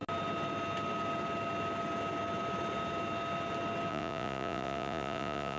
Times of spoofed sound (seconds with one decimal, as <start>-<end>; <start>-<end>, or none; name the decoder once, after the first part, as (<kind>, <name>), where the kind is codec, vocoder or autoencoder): 3.9-5.6 (vocoder, Vocos)